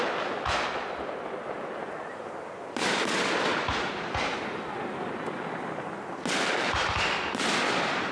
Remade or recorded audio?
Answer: recorded